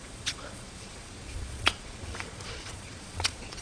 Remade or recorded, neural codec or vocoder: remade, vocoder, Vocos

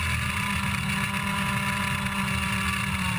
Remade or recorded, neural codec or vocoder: recorded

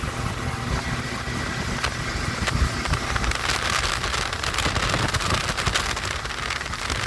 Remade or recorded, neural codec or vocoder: recorded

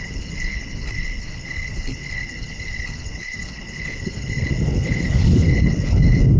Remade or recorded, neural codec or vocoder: remade, codec, HILCodec